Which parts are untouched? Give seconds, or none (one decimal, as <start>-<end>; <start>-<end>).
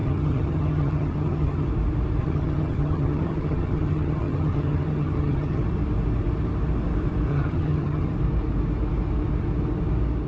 1.7-2.2; 5.6-7.3; 8.1-10.3